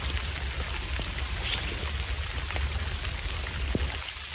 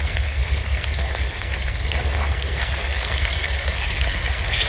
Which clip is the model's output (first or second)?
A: second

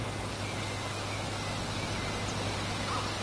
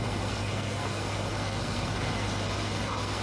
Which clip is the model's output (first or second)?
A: second